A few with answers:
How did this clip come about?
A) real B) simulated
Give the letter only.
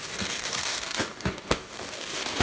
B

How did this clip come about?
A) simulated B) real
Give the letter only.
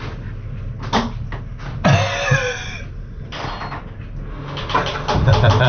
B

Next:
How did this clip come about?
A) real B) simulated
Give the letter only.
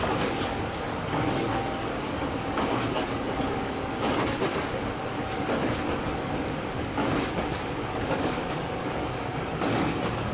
B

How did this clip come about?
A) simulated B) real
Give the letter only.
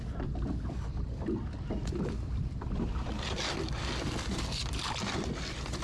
B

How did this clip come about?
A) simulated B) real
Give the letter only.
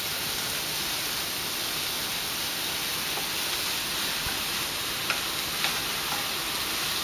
B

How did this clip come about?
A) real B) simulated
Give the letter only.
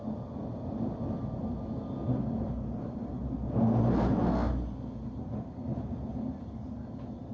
A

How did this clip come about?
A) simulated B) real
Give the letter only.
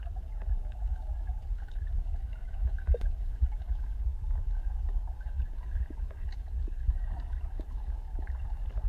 A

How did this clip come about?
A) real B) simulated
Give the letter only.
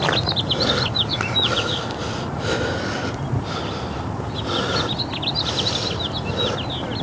A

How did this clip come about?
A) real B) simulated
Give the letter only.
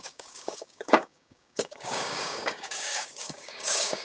B